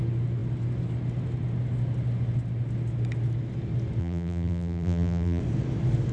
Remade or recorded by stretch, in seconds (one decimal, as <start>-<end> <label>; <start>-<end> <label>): 0.0-4.0 recorded; 4.0-5.4 remade; 5.4-6.1 recorded